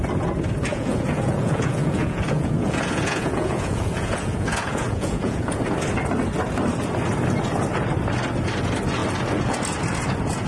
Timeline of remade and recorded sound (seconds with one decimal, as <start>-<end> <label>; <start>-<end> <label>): 0.0-0.7 recorded; 0.7-5.6 remade; 5.6-10.5 recorded